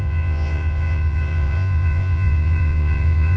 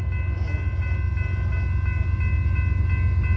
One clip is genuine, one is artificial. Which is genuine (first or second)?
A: second